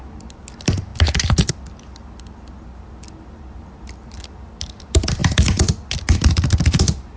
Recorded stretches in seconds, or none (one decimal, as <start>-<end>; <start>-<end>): 0.0-7.2